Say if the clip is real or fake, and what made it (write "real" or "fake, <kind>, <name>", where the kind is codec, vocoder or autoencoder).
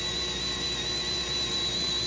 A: real